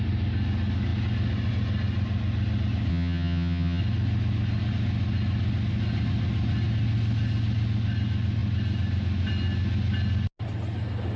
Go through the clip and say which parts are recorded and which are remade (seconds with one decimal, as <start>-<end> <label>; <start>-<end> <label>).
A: 0.0-2.9 recorded; 2.9-3.8 remade; 3.8-11.2 recorded